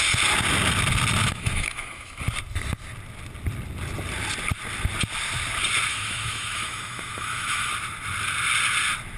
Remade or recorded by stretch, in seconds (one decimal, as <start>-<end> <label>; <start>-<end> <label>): 0.0-1.2 recorded; 1.2-2.2 remade; 2.2-5.9 recorded; 5.9-7.7 remade; 7.7-9.2 recorded